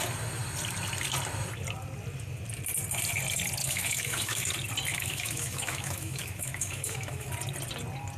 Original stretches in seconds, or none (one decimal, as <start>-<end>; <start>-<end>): 0.0-3.6; 4.5-4.9; 7.3-8.2